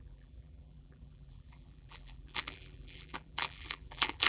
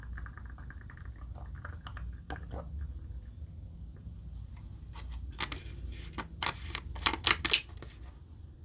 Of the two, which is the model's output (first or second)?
first